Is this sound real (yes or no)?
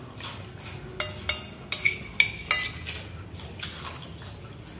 yes